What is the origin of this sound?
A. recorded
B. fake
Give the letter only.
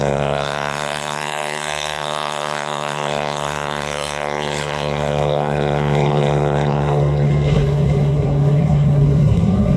B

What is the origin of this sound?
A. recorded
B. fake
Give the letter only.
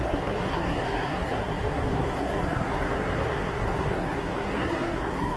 B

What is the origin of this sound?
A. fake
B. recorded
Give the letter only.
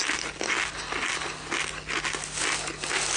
B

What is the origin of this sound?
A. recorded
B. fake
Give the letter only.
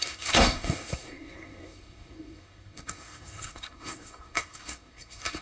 B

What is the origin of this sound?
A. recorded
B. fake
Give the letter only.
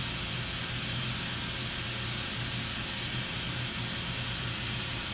A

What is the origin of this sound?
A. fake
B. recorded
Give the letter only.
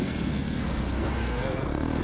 A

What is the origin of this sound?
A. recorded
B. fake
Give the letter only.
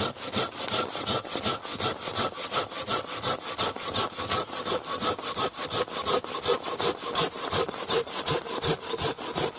A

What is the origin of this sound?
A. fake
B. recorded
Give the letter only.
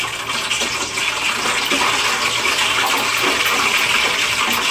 B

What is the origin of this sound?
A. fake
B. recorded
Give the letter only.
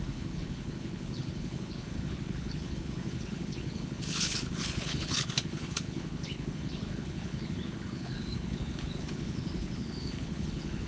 A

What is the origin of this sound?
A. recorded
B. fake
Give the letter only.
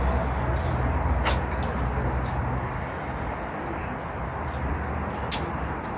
A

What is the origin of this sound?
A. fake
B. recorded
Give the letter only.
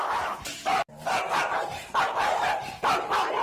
A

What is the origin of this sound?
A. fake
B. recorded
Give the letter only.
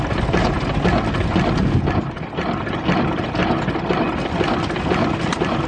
B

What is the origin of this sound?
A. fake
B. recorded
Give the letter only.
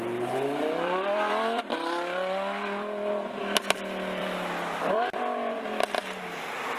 A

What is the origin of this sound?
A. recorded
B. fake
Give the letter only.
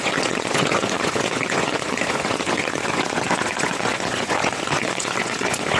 B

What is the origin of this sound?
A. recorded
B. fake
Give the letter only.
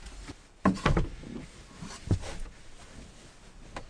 A